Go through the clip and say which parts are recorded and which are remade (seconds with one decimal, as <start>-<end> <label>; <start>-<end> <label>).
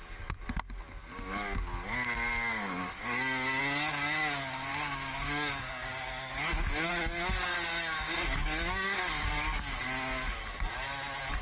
0.0-1.1 recorded; 1.1-3.6 remade; 3.6-4.7 recorded; 4.7-6.9 remade; 6.9-7.7 recorded; 7.7-9.6 remade; 9.6-11.4 recorded